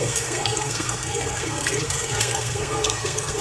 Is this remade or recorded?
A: remade